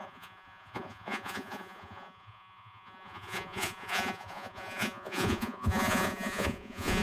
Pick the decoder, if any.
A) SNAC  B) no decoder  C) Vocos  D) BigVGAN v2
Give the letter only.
C